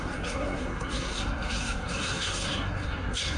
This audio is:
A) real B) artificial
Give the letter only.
B